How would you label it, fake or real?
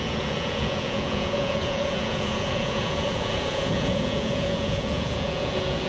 fake